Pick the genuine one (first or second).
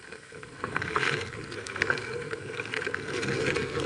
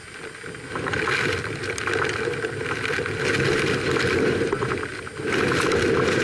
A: second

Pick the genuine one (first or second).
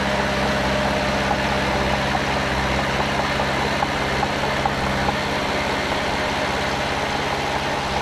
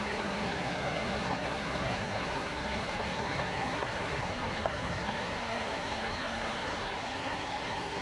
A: first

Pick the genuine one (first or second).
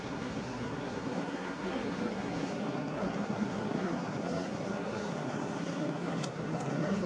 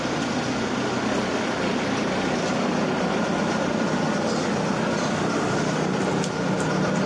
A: second